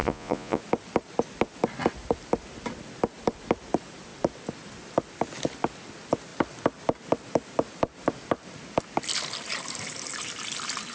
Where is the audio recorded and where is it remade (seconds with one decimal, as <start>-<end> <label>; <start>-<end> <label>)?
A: 0.0-0.6 remade; 0.6-10.9 recorded